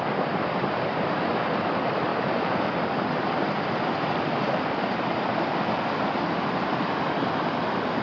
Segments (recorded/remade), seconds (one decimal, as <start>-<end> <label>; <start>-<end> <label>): 0.0-8.0 recorded

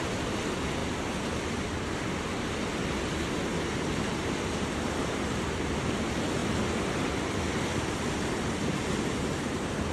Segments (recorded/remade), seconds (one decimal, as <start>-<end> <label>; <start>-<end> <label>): 0.0-9.9 recorded

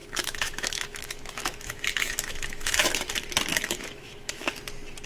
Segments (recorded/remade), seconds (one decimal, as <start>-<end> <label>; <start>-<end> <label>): 0.0-3.1 remade; 3.1-3.5 recorded; 3.5-4.5 remade; 4.5-5.1 recorded